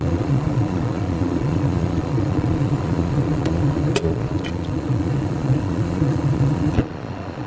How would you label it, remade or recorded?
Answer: remade